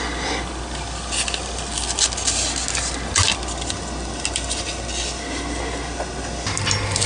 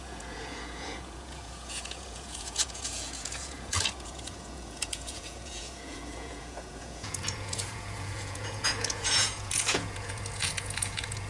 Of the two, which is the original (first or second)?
first